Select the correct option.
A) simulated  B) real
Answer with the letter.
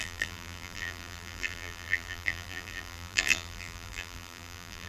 A